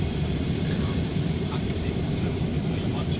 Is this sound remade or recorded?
remade